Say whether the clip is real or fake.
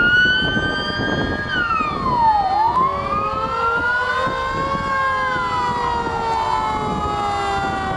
real